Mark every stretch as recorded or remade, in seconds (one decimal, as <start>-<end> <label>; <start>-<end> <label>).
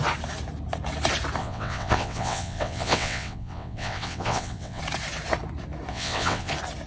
0.0-1.4 recorded; 1.4-4.8 remade; 4.8-5.9 recorded; 5.9-6.5 remade; 6.5-6.9 recorded